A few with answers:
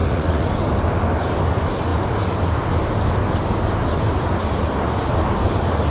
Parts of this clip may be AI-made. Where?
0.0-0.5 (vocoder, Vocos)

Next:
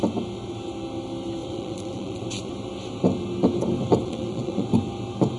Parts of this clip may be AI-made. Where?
1.4-2.5 (vocoder, Vocos); 4.0-4.7

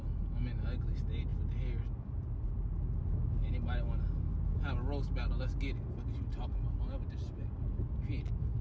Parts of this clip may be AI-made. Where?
none

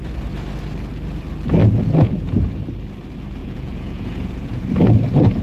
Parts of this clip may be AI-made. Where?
1.6-2.1 (vocoder, Vocos); 3.4-4.6

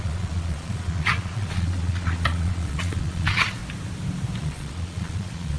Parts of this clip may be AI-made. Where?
0.0-3.6 (vocoder, Vocos); 4.4-5.6

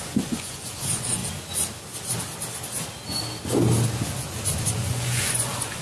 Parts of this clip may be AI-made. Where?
0.0-1.2 (vocoder, Vocos); 4.6-5.8

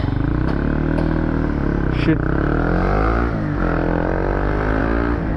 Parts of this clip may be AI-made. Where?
none

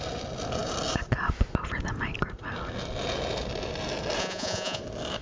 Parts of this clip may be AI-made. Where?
4.2-4.8 (vocoder, Vocos)